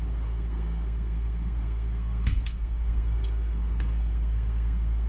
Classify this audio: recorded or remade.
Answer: remade